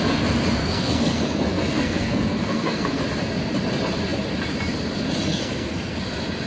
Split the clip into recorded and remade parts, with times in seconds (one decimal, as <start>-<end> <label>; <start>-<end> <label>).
0.0-0.6 recorded; 0.6-3.0 remade; 3.0-5.3 recorded; 5.3-6.0 remade; 6.0-6.5 recorded